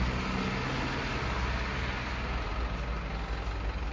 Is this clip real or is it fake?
real